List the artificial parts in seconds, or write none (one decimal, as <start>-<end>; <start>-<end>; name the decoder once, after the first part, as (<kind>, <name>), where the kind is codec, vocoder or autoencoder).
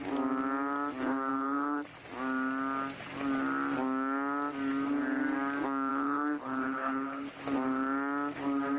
1.3-1.9 (codec, HILCodec); 5.9-7.3